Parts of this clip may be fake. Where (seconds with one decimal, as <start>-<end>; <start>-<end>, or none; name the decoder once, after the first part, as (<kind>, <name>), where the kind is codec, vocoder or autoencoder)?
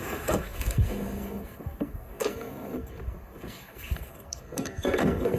0.0-5.4 (codec, SNAC)